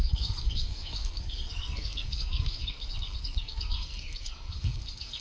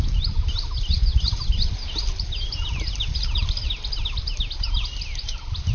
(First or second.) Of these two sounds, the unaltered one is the second